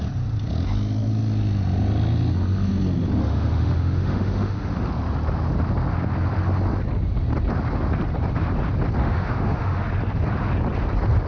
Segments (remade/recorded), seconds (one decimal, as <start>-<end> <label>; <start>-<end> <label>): 0.0-3.2 recorded; 3.2-4.9 remade; 4.9-9.0 recorded; 9.0-9.8 remade; 9.8-11.3 recorded